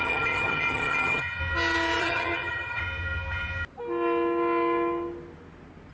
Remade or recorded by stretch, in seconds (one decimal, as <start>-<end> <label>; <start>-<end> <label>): 0.0-1.4 remade; 1.4-2.0 recorded; 2.0-2.8 remade; 2.8-5.9 recorded

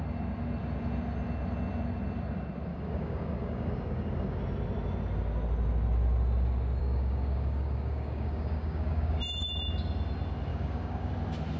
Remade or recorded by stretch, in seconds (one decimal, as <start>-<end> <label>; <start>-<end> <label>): 0.0-2.7 recorded; 2.7-4.4 remade; 4.4-6.8 recorded; 6.8-9.2 remade; 9.2-10.5 recorded; 10.5-11.1 remade; 11.1-11.6 recorded

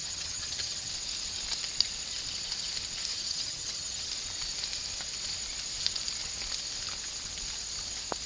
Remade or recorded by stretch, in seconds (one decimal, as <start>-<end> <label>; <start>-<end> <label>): 0.0-0.9 remade; 0.9-3.1 recorded; 3.1-4.1 remade; 4.1-8.3 recorded

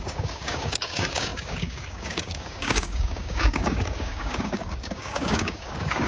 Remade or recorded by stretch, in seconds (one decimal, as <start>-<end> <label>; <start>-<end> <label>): 0.0-6.1 remade